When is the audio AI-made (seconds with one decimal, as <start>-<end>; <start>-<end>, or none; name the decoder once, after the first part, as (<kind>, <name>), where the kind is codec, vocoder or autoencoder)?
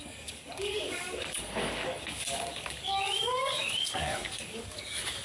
0.0-5.2 (codec, DAC)